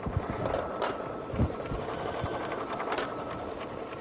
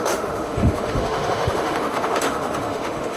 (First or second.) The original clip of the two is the first